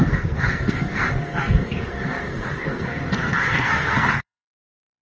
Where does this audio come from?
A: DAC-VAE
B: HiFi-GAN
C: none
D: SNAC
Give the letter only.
D